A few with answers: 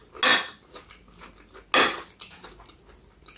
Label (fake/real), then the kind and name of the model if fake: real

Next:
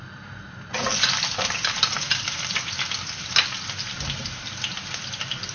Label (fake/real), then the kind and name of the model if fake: real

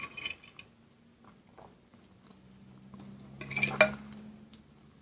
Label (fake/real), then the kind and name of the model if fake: real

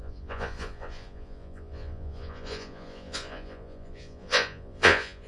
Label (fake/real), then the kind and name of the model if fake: fake, vocoder, Vocos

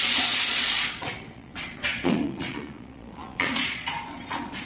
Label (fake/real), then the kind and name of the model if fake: fake, vocoder, Vocos